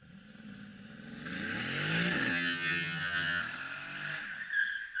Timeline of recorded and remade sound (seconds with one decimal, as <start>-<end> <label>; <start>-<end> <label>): 0.0-2.3 recorded; 2.3-3.4 remade; 3.4-5.0 recorded